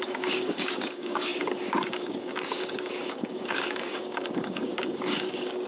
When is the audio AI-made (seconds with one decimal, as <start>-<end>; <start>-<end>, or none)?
0.0-5.7